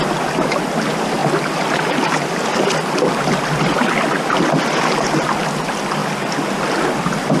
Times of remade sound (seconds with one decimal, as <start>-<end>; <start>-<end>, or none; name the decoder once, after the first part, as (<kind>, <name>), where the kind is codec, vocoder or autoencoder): none